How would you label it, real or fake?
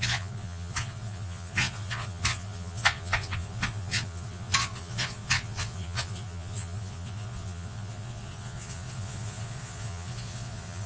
fake